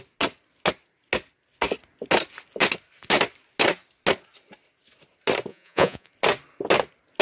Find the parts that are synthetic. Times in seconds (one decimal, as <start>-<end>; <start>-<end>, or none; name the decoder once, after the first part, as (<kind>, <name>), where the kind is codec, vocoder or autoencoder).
5.5-6.1 (vocoder, Vocos)